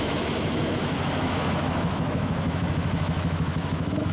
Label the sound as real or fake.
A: fake